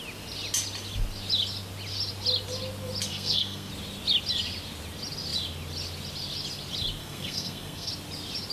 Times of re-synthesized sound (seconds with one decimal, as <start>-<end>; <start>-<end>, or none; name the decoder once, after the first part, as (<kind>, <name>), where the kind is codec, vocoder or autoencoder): 3.1-3.7 (codec, SNAC); 7.0-7.9